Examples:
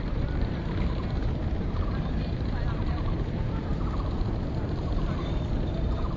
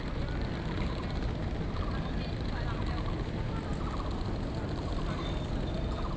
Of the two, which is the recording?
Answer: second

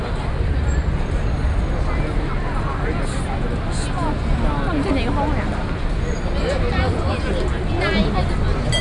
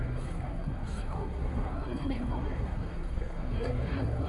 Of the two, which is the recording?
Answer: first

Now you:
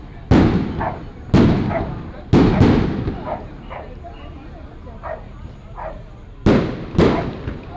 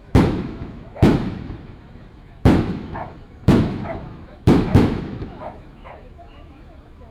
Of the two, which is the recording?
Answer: first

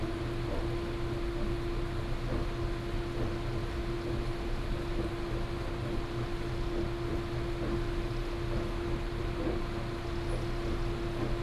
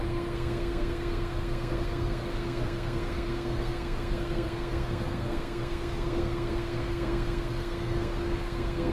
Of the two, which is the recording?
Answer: first